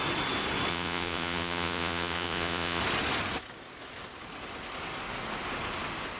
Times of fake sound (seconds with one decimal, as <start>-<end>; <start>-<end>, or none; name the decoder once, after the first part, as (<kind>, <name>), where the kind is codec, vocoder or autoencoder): 0.7-2.8 (vocoder, Vocos)